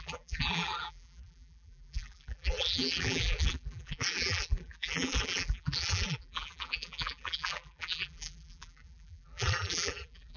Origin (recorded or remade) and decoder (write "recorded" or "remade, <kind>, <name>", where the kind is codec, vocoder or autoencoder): remade, vocoder, BigVGAN v2